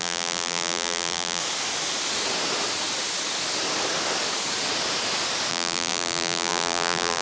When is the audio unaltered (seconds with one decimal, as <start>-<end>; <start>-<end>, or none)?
1.4-5.5